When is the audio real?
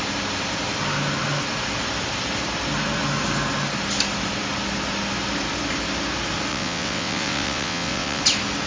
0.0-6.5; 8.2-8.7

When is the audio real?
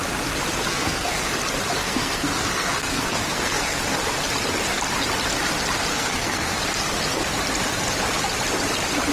0.0-0.7; 1.3-1.8; 3.8-5.9; 6.6-9.1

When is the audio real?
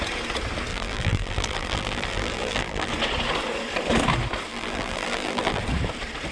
0.0-0.7; 2.9-4.5; 5.6-6.3